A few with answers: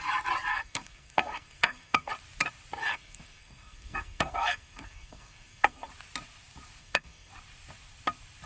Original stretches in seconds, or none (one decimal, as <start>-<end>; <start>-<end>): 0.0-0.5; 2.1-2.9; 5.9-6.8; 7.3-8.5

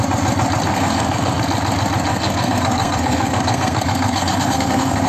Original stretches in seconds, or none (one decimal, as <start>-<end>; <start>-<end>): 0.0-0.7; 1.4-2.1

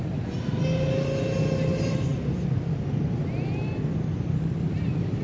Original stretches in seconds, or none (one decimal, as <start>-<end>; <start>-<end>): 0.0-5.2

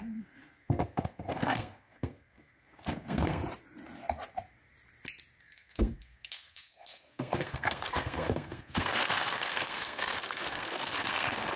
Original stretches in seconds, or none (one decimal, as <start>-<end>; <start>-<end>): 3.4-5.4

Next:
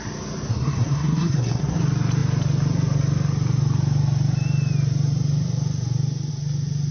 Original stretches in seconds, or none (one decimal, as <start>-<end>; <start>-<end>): 0.0-0.5; 1.8-6.9